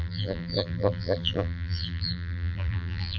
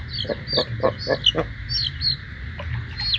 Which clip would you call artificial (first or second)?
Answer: first